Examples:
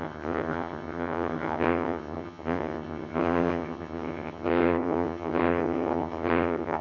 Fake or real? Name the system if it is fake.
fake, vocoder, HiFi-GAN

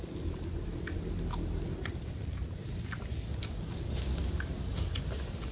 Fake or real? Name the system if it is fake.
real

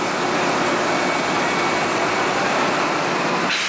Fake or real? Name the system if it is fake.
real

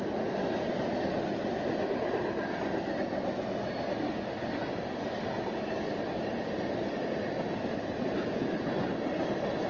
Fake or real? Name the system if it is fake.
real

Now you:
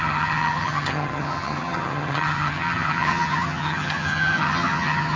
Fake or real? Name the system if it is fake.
fake, vocoder, HiFi-GAN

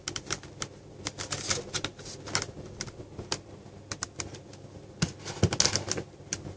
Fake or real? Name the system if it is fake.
real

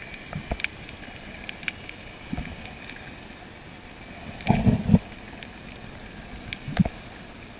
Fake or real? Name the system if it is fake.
real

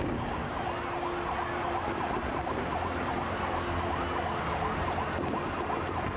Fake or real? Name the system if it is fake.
real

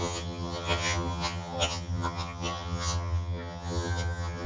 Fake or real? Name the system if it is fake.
fake, vocoder, HiFi-GAN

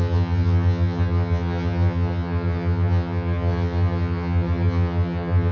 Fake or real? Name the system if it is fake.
fake, vocoder, HiFi-GAN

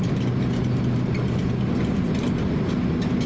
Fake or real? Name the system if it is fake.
real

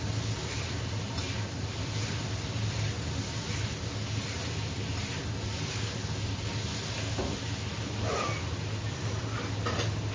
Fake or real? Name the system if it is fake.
real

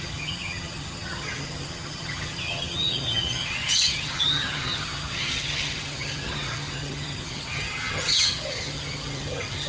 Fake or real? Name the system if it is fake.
fake, vocoder, HiFi-GAN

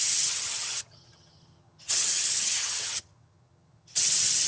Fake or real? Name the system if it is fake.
fake, vocoder, HiFi-GAN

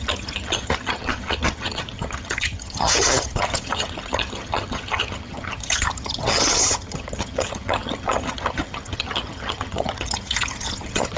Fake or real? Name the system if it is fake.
fake, vocoder, HiFi-GAN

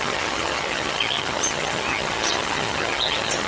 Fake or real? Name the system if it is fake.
fake, vocoder, HiFi-GAN